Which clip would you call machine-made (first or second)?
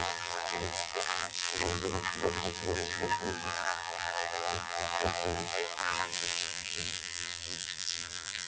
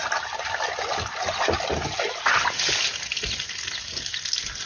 first